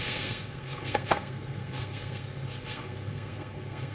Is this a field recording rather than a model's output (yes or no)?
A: no